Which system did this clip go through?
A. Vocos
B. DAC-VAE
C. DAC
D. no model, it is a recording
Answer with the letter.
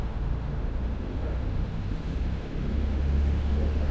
B